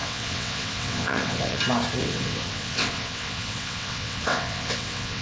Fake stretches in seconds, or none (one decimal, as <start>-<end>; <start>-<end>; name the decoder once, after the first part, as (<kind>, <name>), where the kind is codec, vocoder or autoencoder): 0.0-1.6 (vocoder, WaveNeXt); 2.0-5.2